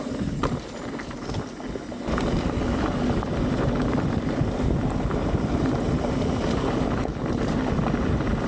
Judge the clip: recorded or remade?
recorded